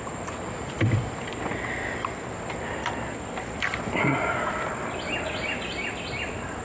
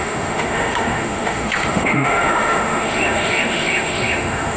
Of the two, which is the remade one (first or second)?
second